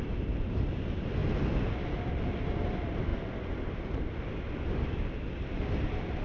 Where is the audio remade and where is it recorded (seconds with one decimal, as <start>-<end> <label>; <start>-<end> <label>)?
0.0-6.2 recorded